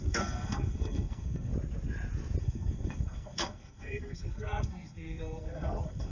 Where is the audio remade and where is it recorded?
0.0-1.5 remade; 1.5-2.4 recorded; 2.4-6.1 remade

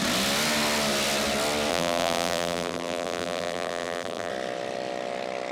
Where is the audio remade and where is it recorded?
0.0-1.7 recorded; 1.7-4.3 remade; 4.3-5.5 recorded

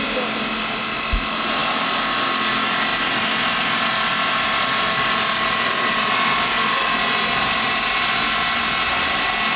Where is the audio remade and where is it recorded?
0.0-9.6 recorded

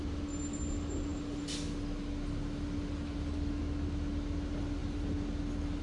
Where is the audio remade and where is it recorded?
0.0-5.8 recorded

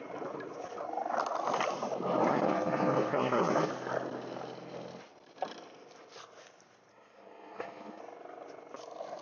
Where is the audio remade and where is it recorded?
0.0-2.3 recorded; 2.3-3.7 remade; 3.7-6.9 recorded; 6.9-8.0 remade; 8.0-9.2 recorded

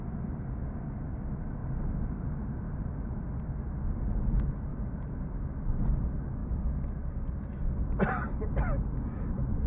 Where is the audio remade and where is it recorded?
0.0-1.6 recorded; 1.6-2.9 remade; 2.9-4.7 recorded; 4.7-5.3 remade; 5.3-9.7 recorded